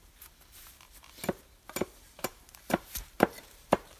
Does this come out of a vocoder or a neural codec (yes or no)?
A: yes